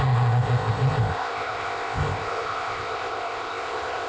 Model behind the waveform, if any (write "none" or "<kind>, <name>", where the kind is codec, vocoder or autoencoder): codec, ZipCodec